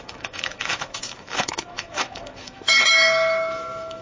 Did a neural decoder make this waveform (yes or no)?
yes